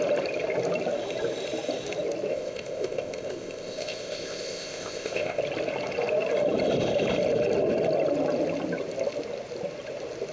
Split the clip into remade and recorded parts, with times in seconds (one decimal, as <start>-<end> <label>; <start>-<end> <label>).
0.0-2.3 recorded; 2.3-5.4 remade; 5.4-10.3 recorded